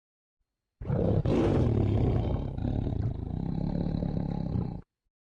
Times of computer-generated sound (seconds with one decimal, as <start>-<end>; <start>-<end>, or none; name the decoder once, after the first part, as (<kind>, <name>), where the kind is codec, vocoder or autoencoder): 1.0-5.3 (vocoder, BigVGAN v2)